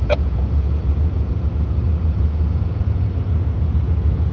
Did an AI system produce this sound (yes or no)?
yes